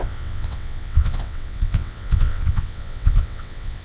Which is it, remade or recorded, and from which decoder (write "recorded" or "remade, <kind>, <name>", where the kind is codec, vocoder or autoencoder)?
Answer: remade, vocoder, WaveNeXt